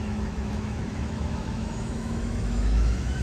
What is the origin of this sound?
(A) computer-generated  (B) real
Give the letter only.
A